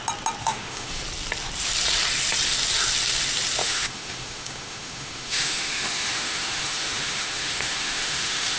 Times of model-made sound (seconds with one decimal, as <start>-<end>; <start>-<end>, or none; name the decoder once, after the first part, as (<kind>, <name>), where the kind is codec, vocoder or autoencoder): 0.4-1.0 (autoencoder, DAC-VAE); 3.6-8.6